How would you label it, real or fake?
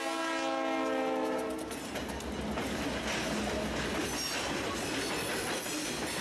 real